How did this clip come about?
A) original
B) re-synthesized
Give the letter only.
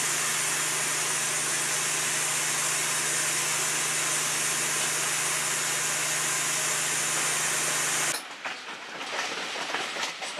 A